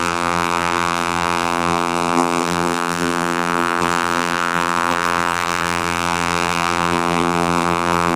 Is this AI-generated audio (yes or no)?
yes